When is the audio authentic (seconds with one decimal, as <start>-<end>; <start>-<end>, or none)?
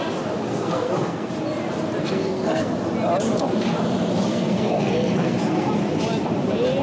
0.0-0.5; 1.3-2.0; 2.7-4.3; 5.7-6.8